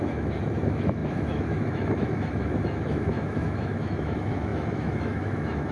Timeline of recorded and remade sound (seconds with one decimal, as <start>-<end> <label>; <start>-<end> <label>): 0.0-5.7 remade